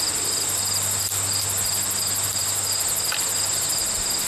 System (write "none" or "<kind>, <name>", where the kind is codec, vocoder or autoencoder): none